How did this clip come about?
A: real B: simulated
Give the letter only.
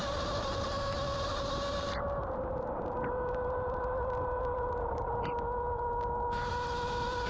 A